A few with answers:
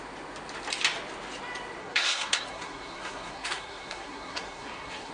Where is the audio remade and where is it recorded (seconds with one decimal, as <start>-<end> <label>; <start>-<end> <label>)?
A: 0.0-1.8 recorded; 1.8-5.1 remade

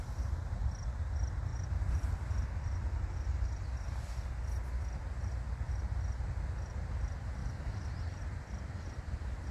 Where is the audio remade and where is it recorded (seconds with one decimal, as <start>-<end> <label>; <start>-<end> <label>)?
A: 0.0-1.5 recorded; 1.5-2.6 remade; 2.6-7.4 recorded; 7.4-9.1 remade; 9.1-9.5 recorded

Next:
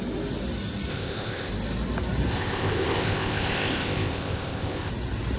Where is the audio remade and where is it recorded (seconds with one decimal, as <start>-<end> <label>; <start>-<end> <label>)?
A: 0.0-0.9 recorded; 0.9-1.5 remade; 1.5-2.3 recorded; 2.3-4.9 remade; 4.9-5.4 recorded